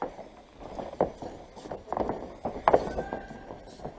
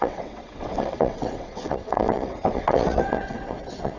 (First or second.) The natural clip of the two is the first